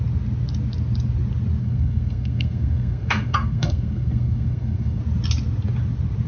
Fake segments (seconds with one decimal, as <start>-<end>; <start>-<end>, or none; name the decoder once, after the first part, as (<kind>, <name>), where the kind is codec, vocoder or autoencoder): 1.6-5.0 (codec, SNAC)